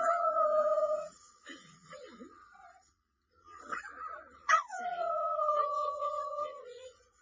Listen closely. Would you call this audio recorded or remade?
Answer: remade